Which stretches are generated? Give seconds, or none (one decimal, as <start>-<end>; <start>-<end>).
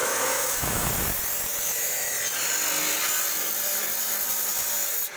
0.0-0.9